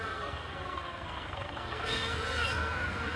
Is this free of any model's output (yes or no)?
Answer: no